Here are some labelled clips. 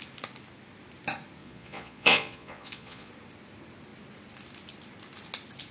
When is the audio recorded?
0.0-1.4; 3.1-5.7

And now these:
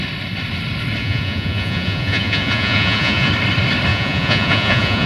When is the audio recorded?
0.0-1.0; 3.3-3.9

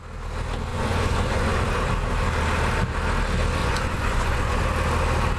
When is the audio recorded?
0.0-0.7; 1.6-3.6; 4.6-5.4

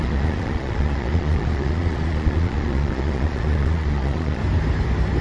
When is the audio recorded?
4.4-5.2

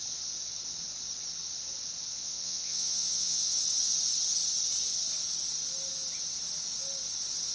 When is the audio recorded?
0.0-2.1; 3.6-7.5

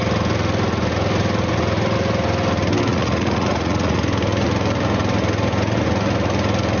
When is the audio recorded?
0.0-2.9; 4.0-6.8